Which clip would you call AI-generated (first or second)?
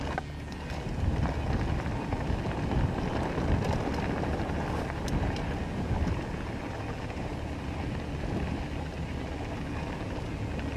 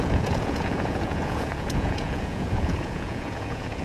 second